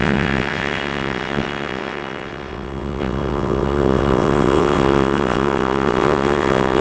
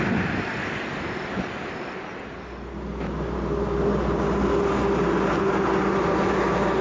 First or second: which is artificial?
first